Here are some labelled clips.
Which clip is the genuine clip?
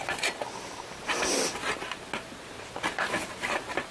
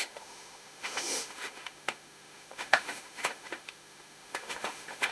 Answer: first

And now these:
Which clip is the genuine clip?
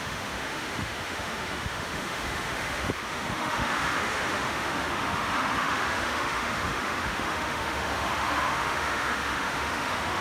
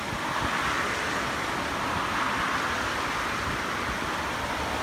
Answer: second